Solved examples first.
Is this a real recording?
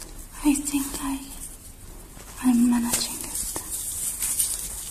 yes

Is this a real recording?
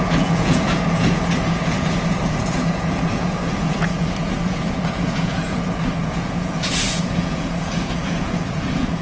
no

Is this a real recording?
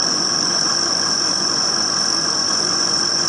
no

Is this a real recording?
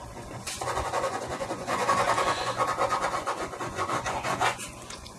no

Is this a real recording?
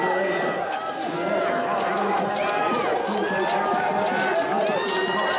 yes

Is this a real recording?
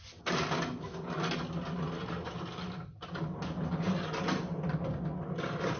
yes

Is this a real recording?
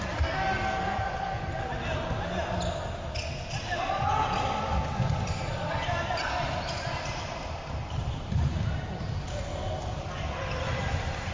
yes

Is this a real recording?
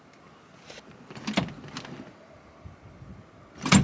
yes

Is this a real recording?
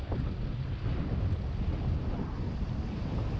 yes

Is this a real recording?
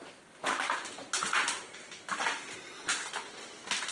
yes